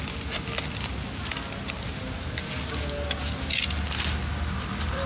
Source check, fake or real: real